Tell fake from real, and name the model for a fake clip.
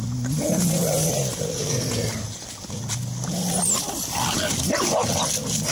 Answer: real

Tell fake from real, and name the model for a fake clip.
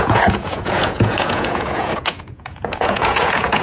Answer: fake, vocoder, Vocos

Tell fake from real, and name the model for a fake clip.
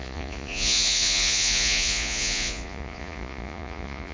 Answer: fake, vocoder, Vocos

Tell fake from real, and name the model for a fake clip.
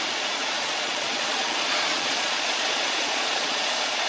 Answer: fake, vocoder, Vocos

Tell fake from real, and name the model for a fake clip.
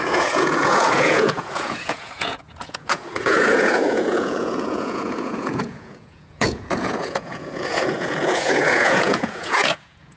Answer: fake, vocoder, Vocos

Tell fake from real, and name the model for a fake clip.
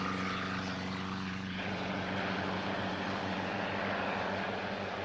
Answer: fake, vocoder, Vocos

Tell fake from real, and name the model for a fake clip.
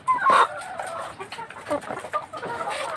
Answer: real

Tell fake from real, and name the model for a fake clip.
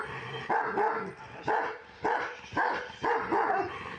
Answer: real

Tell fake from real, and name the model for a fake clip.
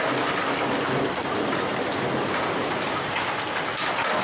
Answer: real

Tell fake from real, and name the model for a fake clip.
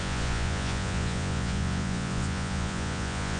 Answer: fake, vocoder, Vocos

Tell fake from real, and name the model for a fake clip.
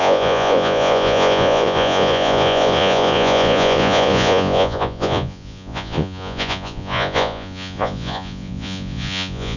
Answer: fake, vocoder, Vocos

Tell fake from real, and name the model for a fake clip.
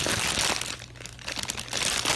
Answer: real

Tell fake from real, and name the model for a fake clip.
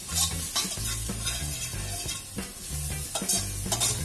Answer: real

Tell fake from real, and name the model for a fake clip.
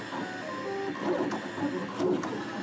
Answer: real